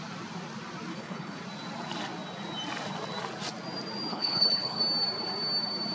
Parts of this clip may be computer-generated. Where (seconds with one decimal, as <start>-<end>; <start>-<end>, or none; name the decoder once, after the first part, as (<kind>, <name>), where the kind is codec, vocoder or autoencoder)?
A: 0.9-1.4 (codec, HILCodec); 4.1-4.8